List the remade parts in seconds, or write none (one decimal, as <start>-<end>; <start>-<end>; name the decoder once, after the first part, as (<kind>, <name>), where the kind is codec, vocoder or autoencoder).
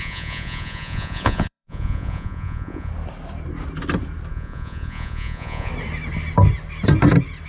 0.0-2.9 (vocoder, Vocos); 4.3-5.7